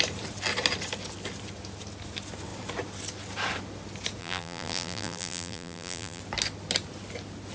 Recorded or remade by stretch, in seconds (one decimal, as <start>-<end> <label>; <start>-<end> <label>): 0.0-4.2 recorded; 4.2-6.2 remade; 6.2-7.5 recorded